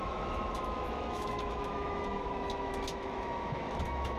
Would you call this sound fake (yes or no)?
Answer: yes